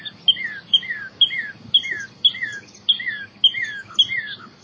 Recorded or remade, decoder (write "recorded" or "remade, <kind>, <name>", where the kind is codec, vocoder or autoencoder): recorded